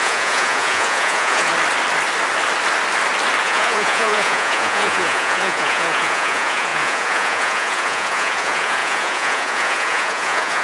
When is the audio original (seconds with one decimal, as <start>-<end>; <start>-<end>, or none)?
1.5-3.4